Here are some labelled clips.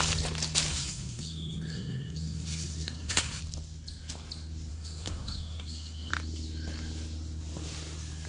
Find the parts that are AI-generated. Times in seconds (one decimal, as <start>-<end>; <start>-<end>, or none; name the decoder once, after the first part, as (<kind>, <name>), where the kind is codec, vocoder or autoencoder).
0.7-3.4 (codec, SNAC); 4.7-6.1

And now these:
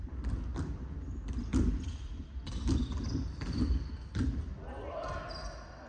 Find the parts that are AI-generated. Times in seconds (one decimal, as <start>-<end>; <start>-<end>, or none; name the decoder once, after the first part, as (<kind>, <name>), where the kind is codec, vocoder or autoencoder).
1.5-2.3 (vocoder, BigVGAN v2)

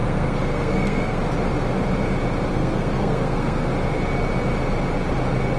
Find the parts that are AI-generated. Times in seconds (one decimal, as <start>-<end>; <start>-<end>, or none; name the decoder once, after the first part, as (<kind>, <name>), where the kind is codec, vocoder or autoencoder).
0.0-1.2 (codec, SNAC); 2.5-3.7

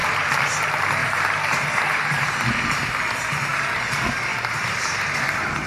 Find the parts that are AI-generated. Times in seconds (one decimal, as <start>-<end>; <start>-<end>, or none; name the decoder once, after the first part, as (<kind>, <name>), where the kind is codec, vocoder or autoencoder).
1.0-1.8 (vocoder, BigVGAN v2); 4.3-5.2